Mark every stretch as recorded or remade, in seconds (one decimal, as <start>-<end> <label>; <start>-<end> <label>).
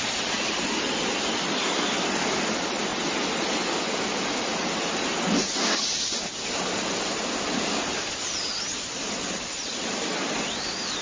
0.0-2.9 remade; 2.9-4.0 recorded; 4.0-5.1 remade; 5.1-6.1 recorded; 6.1-10.1 remade; 10.1-11.0 recorded